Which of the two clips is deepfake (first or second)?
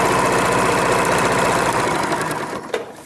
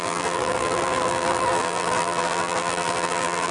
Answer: second